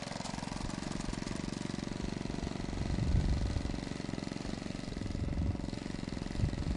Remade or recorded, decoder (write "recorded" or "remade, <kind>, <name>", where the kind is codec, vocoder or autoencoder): recorded